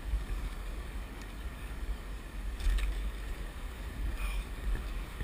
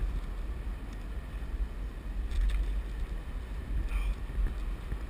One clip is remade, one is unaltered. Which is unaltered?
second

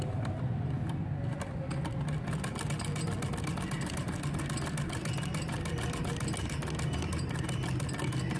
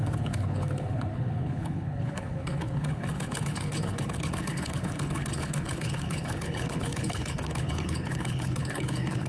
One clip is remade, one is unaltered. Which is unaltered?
first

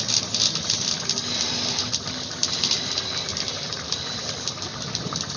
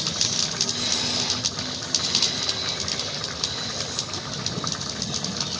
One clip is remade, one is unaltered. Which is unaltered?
second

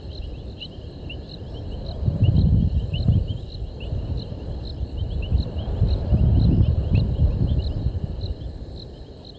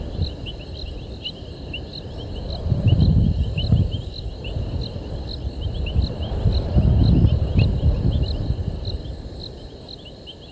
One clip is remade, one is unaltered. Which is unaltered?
second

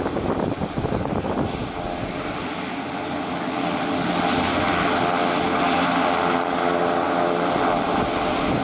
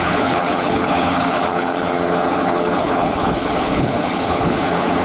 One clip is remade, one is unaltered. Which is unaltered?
first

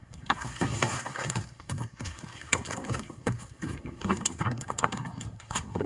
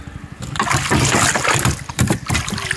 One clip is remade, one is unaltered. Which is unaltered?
second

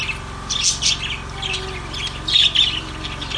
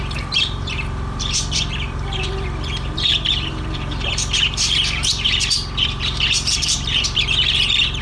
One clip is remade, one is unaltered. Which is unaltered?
first